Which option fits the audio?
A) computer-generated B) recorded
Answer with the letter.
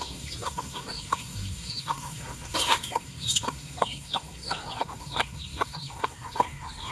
A